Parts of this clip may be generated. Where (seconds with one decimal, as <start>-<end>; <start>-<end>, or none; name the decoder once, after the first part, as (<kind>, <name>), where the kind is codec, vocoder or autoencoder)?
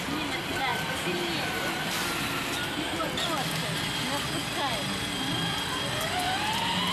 none